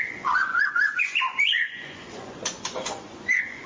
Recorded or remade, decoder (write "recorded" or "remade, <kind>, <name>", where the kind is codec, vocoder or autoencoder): remade, vocoder, Vocos